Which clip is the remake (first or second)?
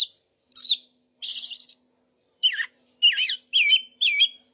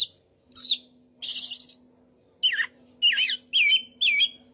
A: first